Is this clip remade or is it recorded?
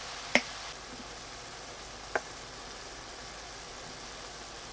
recorded